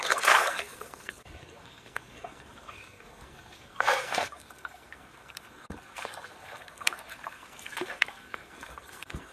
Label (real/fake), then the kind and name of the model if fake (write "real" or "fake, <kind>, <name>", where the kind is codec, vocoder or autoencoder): fake, codec, SNAC